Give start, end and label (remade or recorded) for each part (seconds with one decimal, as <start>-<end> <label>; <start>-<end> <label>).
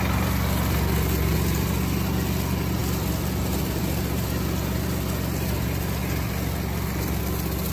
0.0-7.7 recorded